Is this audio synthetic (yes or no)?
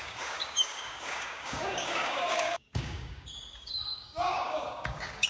yes